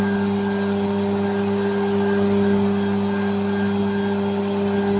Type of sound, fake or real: real